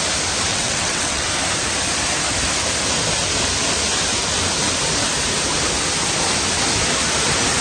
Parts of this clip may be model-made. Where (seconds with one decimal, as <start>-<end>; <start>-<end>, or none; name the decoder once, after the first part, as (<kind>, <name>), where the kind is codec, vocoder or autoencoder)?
0.5-1.3 (vocoder, WaveNeXt)